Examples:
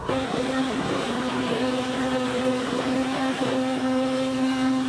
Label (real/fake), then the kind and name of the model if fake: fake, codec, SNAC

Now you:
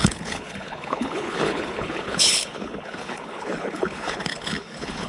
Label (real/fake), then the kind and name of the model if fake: fake, codec, HILCodec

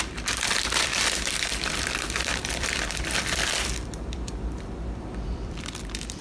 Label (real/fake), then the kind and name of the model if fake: fake, vocoder, BigVGAN v2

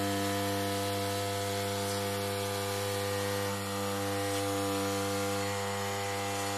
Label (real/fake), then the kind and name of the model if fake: real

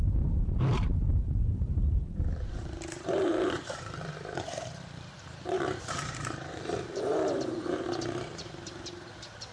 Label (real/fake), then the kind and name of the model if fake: fake, vocoder, BigVGAN v2